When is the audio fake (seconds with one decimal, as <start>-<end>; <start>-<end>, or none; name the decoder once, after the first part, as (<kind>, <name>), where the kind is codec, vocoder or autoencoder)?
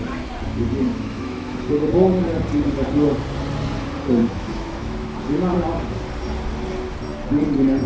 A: 0.9-1.7 (autoencoder, DAC-VAE); 4.2-5.5